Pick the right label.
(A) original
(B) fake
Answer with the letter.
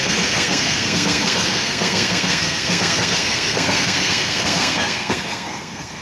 B